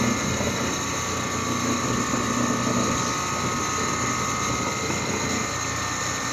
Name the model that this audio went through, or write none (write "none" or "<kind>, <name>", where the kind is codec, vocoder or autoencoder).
none